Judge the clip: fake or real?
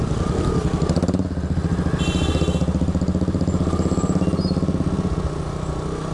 real